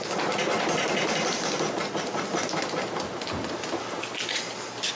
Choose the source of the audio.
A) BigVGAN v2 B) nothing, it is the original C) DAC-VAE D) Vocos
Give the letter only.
B